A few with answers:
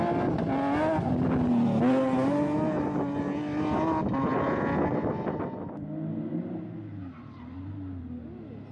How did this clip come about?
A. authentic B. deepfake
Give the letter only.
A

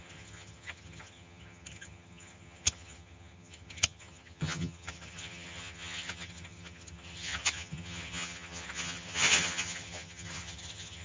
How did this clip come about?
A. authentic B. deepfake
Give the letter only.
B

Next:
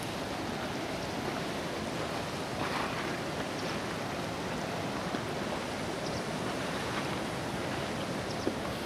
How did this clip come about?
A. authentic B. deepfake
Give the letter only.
A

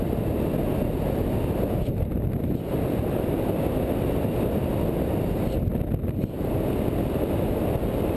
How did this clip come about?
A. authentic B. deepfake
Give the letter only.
A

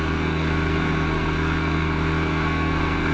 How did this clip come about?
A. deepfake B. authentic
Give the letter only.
A